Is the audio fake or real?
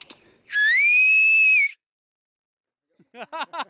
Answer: real